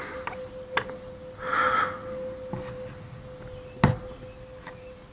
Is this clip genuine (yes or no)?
yes